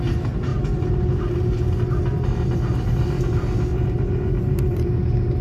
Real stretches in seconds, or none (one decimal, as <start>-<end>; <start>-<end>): 0.0-3.7; 4.9-5.4